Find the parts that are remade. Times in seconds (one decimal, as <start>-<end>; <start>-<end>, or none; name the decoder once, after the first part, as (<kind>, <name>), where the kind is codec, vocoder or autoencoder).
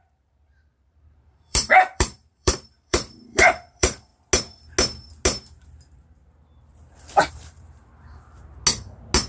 0.0-4.1 (vocoder, BigVGAN v2); 7.3-7.8